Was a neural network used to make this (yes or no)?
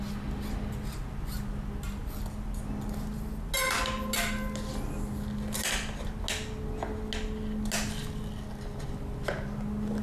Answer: no